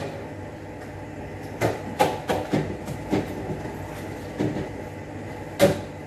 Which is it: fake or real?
real